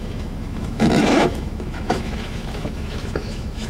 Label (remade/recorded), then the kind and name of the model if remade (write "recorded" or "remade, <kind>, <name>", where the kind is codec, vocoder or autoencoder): remade, autoencoder, DAC-VAE